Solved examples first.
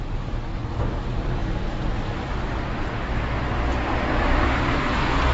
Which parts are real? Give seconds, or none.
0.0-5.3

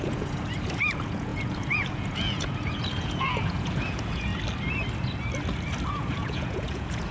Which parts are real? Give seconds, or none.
4.3-5.9

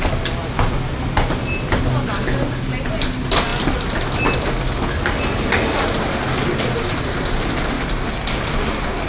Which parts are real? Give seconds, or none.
0.0-9.1

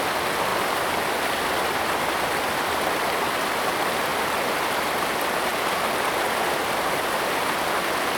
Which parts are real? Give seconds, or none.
0.0-5.5; 7.6-8.2

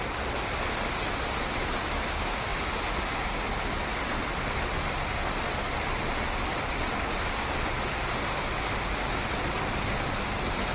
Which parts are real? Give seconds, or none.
0.0-10.7